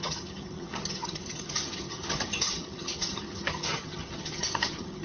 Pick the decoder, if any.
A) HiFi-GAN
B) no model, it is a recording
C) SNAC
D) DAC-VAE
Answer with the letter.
A